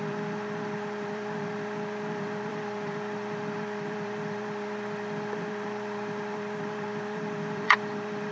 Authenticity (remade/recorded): remade